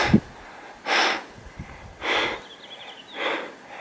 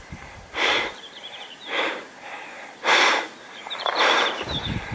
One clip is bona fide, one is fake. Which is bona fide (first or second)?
first